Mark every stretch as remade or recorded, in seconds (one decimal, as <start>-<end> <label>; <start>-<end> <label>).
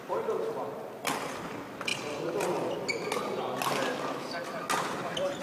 0.0-5.4 recorded